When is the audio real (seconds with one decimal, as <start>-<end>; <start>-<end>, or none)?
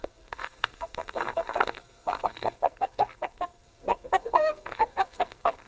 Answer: none